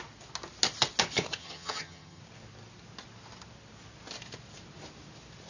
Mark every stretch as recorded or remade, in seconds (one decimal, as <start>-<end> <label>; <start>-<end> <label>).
0.0-1.4 recorded; 1.4-2.2 remade; 2.2-5.5 recorded

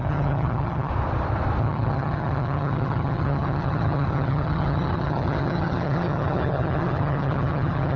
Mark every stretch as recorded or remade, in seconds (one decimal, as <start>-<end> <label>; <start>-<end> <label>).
0.0-0.9 remade; 0.9-1.6 recorded; 1.6-8.0 remade

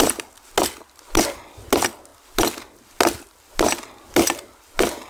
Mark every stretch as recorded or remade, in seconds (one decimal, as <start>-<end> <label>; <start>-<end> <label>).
0.0-5.1 recorded

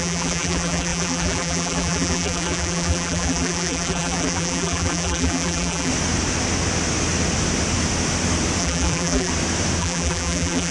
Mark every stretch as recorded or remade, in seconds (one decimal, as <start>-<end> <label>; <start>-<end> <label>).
0.0-5.9 remade; 5.9-8.6 recorded; 8.6-9.3 remade; 9.3-9.8 recorded; 9.8-10.7 remade